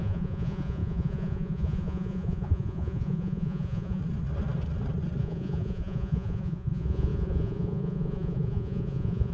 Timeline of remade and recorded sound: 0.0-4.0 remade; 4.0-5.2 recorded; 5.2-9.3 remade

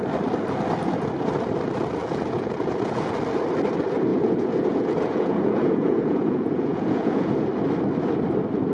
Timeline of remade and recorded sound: 0.0-2.0 recorded; 2.0-3.1 remade; 3.1-4.1 recorded; 4.1-7.3 remade; 7.3-8.7 recorded

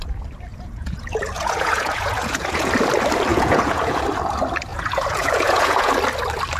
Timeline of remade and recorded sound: 0.0-0.5 recorded; 0.5-2.7 remade; 2.7-3.3 recorded; 3.3-4.0 remade; 4.0-4.7 recorded; 4.7-5.9 remade; 5.9-6.6 recorded

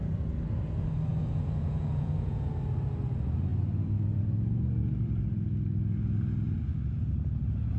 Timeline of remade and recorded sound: 0.0-1.1 recorded; 1.1-2.5 remade; 2.5-7.8 recorded

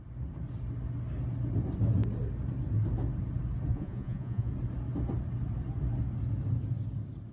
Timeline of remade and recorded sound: 0.0-3.7 recorded; 3.7-4.5 remade; 4.5-7.3 recorded